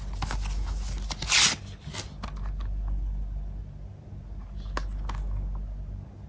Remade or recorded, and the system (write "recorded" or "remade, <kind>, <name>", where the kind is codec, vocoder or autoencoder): recorded